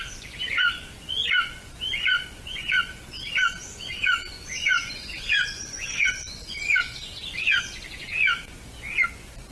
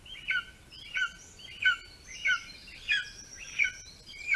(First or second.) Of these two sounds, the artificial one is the first